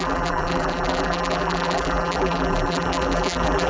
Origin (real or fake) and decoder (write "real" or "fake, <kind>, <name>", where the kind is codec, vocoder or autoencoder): fake, vocoder, BigVGAN v2